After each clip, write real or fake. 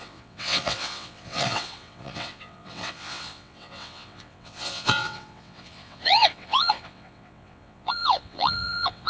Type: fake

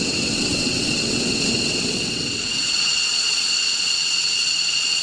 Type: fake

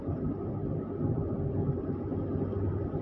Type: real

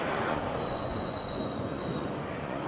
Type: fake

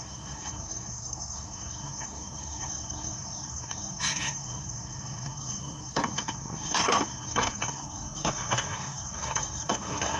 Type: fake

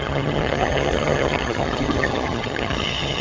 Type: fake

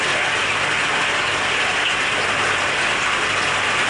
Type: real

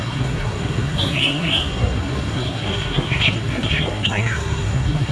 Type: fake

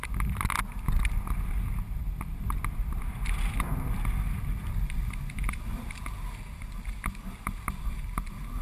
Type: real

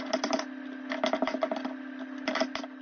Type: real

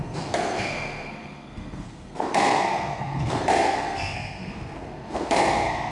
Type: fake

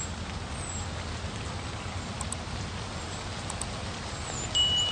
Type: real